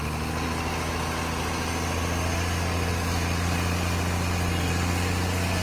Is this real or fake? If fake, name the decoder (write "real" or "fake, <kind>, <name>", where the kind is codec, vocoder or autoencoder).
real